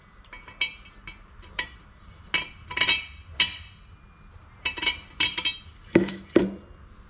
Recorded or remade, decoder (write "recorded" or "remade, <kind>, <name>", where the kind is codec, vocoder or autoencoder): recorded